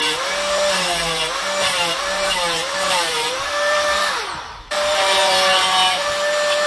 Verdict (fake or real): fake